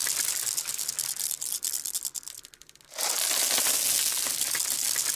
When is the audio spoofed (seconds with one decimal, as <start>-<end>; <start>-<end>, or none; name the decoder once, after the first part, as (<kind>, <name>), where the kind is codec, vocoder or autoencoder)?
none